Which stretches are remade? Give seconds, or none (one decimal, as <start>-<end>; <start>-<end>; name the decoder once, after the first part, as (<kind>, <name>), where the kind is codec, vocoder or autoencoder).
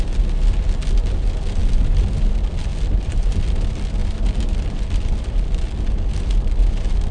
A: 2.7-3.4 (vocoder, BigVGAN v2); 4.0-5.9